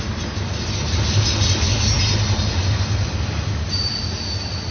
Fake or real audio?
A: real